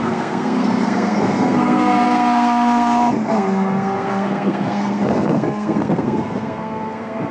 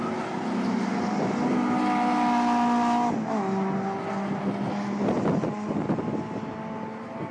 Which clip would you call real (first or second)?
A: second